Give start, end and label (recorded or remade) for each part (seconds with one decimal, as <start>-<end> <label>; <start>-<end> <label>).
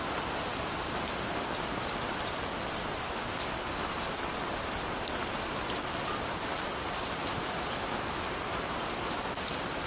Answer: 0.0-9.9 recorded